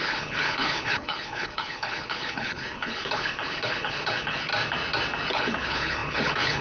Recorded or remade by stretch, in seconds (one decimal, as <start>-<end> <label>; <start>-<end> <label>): 0.0-4.5 remade; 4.5-5.3 recorded; 5.3-6.6 remade